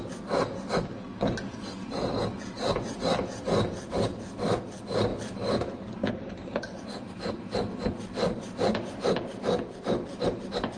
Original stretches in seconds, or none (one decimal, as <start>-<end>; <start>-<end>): 0.0-10.8